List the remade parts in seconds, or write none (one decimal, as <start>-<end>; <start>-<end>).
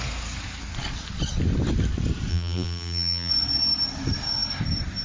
2.3-3.3